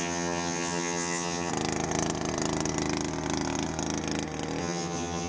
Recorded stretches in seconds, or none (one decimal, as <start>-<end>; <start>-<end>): 1.5-4.6